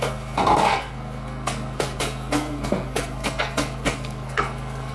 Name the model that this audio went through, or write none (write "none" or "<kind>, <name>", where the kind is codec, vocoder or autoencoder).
codec, SNAC